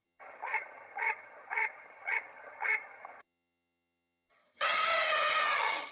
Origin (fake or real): fake